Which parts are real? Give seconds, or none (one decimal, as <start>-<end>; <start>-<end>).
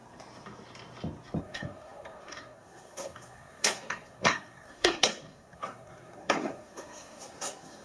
0.0-1.4